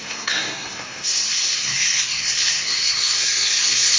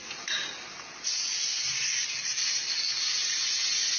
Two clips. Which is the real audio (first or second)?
second